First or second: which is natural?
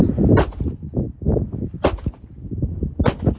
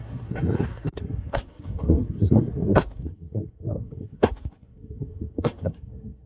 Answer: first